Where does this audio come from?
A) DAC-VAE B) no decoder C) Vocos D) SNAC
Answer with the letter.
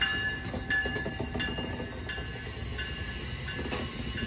B